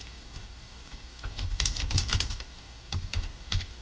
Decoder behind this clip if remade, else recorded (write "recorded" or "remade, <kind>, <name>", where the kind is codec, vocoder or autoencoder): remade, codec, DAC